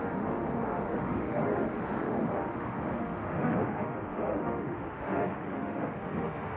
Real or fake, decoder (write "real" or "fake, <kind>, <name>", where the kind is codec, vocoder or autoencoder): fake, autoencoder, DAC-VAE